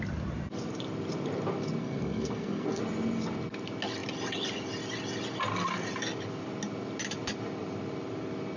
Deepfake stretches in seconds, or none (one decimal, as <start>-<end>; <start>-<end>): 1.8-2.8